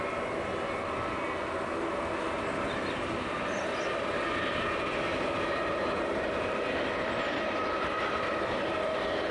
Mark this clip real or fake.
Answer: real